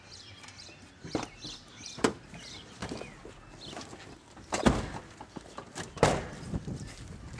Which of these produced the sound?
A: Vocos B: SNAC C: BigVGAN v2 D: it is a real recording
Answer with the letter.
D